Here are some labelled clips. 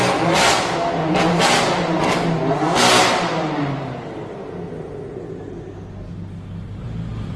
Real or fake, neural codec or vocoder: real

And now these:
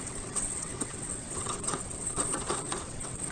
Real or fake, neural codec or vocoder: fake, vocoder, WaveNeXt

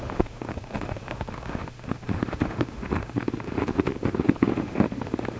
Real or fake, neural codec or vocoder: fake, autoencoder, DAC-VAE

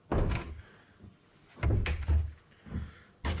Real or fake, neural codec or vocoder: real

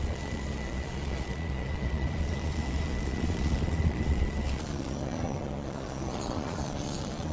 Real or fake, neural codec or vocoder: fake, vocoder, Vocos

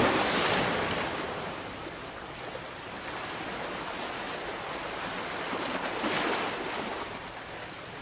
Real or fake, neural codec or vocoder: real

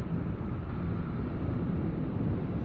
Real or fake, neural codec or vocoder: real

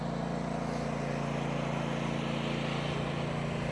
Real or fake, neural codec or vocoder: real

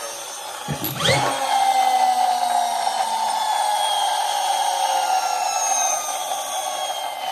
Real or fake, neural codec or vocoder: real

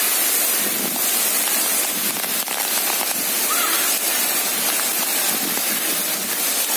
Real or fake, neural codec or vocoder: real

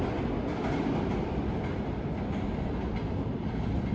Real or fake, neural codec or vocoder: real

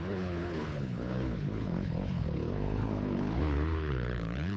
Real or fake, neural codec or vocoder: fake, codec, HILCodec